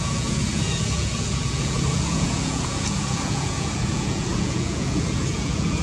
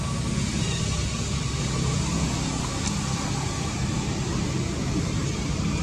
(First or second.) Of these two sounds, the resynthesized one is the first